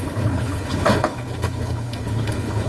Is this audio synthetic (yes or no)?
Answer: yes